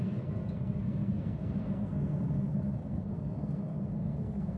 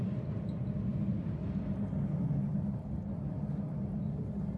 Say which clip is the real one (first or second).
second